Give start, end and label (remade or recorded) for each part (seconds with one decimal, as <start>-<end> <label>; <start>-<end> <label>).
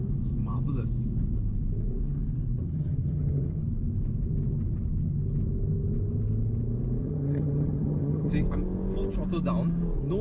0.0-2.6 recorded; 2.6-3.6 remade; 3.6-7.0 recorded; 7.0-8.3 remade; 8.3-10.2 recorded